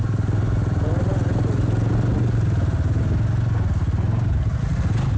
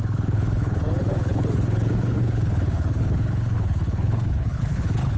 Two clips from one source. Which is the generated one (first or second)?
second